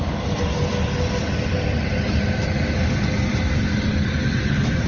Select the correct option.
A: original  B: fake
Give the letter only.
A